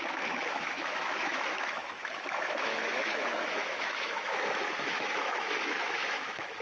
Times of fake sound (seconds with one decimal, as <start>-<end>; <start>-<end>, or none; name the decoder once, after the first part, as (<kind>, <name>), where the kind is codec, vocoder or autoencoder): 0.0-6.6 (autoencoder, DAC-VAE)